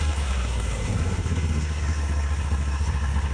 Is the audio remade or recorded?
remade